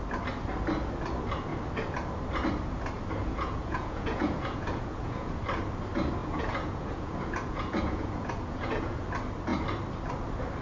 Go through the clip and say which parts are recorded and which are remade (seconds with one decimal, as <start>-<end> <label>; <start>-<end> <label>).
0.0-3.2 recorded; 3.2-5.4 remade; 5.4-6.2 recorded; 6.2-9.0 remade; 9.0-10.6 recorded